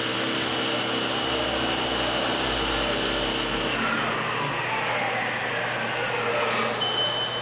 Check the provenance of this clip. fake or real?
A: real